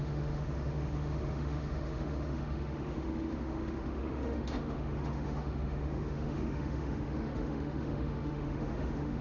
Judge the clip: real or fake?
fake